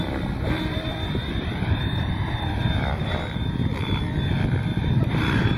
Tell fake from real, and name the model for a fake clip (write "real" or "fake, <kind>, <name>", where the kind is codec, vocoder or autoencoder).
fake, vocoder, BigVGAN v2